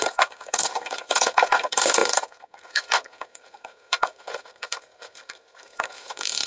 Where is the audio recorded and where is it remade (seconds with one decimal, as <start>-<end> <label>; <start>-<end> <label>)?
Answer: 0.0-6.5 remade